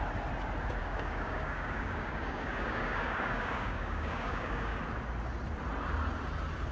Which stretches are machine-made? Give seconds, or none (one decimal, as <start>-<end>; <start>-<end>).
0.8-4.8